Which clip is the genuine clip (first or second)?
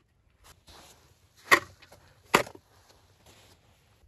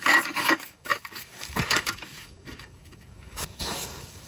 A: first